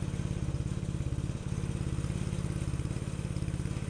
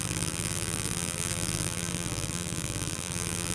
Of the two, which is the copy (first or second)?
second